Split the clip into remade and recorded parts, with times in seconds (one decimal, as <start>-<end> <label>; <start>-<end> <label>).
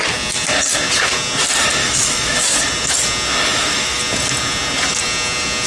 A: 0.0-1.8 recorded; 1.8-2.6 remade; 2.6-3.5 recorded; 3.5-4.0 remade; 4.0-5.7 recorded